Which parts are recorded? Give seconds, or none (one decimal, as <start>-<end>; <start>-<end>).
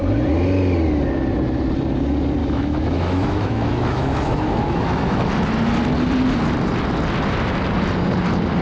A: 0.0-2.4; 5.3-8.6